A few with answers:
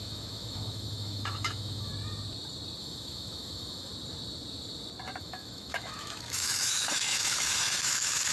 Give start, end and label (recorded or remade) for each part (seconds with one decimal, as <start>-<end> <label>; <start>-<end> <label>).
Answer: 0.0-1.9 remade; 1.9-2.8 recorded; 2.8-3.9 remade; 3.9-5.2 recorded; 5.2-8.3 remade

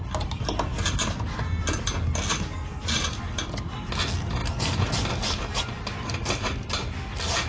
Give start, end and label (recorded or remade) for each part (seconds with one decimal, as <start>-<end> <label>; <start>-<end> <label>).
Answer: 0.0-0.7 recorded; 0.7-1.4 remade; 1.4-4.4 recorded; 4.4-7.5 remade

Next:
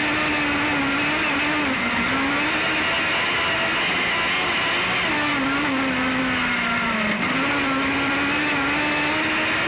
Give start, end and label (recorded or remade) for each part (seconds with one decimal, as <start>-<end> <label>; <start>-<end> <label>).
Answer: 0.0-9.7 recorded